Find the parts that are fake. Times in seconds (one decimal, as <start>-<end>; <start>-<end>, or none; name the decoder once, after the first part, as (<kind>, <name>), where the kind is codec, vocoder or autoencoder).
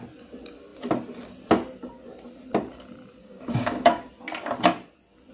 3.2-4.1 (codec, DAC)